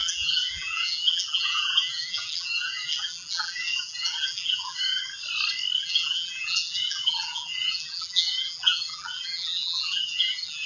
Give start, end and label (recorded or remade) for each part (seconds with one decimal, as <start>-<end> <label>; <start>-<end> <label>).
0.0-5.0 remade; 5.0-5.8 recorded; 5.8-10.7 remade